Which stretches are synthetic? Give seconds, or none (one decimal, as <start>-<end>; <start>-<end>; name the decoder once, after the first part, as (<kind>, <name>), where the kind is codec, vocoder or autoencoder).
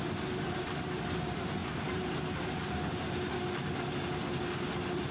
none